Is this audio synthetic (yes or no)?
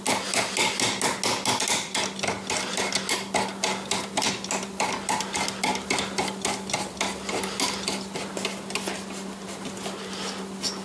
no